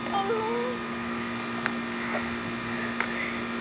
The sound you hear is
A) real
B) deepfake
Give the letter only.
A